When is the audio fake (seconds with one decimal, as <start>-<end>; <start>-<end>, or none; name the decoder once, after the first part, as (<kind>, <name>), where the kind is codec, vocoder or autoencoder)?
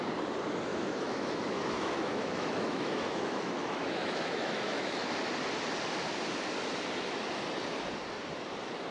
0.7-5.1 (autoencoder, DAC-VAE)